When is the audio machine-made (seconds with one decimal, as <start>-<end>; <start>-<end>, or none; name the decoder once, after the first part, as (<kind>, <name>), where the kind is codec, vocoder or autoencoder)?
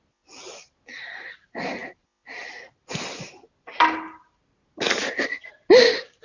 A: none